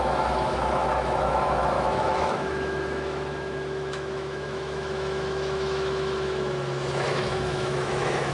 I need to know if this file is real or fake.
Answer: fake